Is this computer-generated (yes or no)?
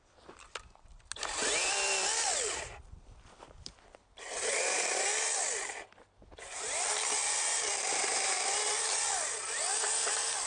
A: no